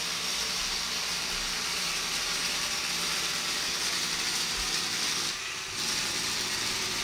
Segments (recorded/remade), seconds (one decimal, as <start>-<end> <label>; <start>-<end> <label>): 0.0-7.0 recorded